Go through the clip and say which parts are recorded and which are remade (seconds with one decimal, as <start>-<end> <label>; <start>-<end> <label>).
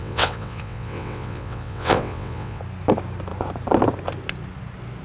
0.0-2.6 remade; 2.6-5.0 recorded